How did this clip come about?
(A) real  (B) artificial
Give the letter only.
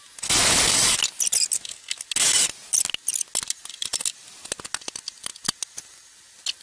A